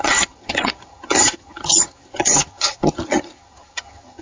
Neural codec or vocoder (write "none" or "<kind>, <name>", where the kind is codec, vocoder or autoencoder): vocoder, HiFi-GAN